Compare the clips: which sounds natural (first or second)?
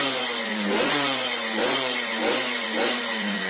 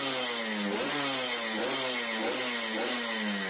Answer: second